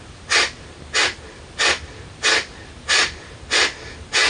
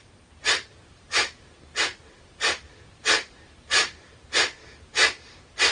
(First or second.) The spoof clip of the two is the second